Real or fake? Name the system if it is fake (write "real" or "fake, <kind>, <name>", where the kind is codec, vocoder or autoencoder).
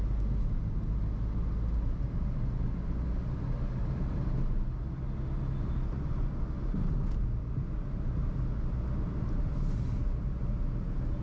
real